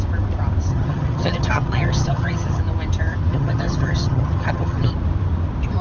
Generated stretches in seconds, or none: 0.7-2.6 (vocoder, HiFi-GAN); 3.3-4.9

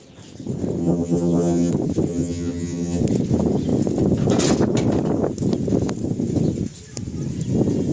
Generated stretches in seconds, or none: 0.8-1.7 (vocoder, HiFi-GAN); 2.1-3.0

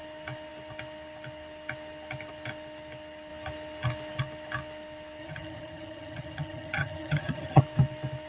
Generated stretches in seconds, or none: 5.2-7.6 (vocoder, HiFi-GAN)

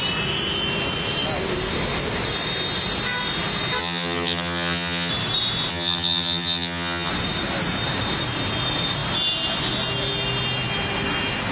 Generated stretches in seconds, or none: 3.8-5.1 (vocoder, HiFi-GAN); 5.7-7.1

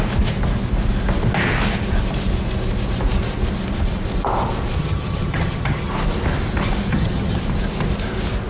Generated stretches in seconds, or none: 4.8-5.9 (vocoder, HiFi-GAN); 6.9-7.4

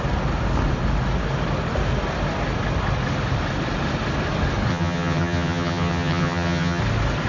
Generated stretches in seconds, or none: 4.7-6.8 (vocoder, HiFi-GAN)

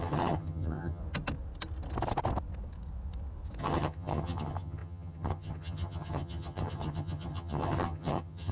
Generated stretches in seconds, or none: 0.0-1.0 (vocoder, HiFi-GAN); 3.6-8.5